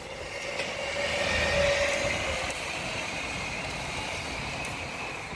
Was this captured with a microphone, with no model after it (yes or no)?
yes